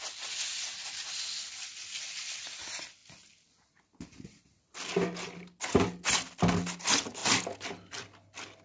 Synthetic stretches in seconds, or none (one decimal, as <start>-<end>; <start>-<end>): none